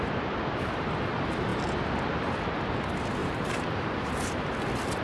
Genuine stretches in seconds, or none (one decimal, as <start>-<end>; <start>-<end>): 0.0-3.2; 4.1-5.0